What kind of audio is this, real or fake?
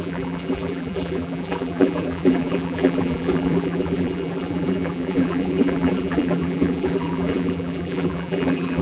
fake